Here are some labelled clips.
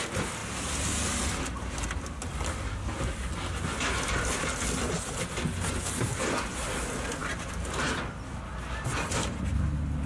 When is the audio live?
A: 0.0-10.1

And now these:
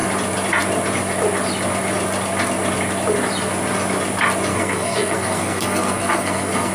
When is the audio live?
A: 0.0-4.5